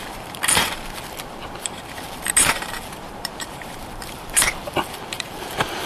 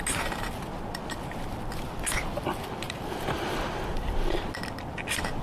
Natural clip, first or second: second